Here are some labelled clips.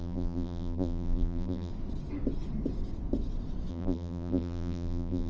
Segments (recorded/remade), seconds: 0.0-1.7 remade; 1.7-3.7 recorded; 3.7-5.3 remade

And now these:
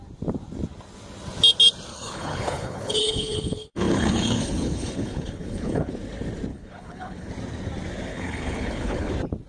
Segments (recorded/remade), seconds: 0.0-1.9 recorded; 1.9-5.9 remade; 5.9-6.5 recorded; 6.5-7.3 remade; 7.3-8.1 recorded; 8.1-9.1 remade; 9.1-9.5 recorded